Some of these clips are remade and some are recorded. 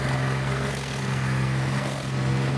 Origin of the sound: remade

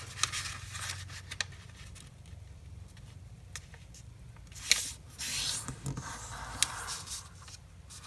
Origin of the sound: recorded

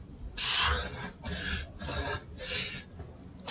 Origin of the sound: recorded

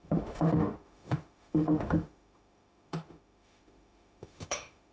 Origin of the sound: remade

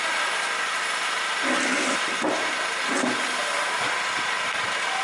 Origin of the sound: recorded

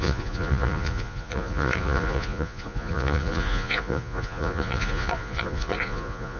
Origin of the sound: remade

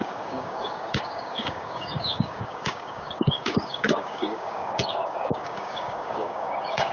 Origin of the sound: remade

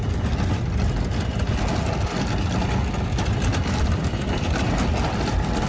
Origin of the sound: recorded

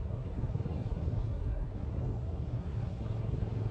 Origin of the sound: remade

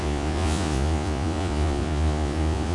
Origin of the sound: remade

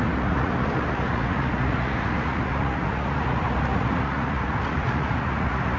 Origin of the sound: remade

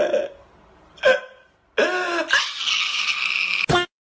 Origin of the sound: recorded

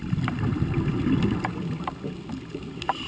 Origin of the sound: recorded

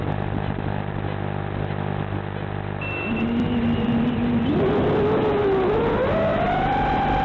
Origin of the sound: recorded